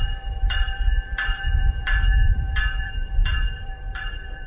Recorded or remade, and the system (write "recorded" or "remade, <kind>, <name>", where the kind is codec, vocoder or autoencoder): remade, vocoder, BigVGAN v2